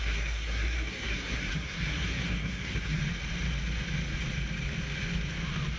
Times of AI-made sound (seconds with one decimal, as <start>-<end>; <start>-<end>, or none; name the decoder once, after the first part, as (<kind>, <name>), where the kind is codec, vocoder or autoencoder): 0.0-3.0 (codec, SNAC)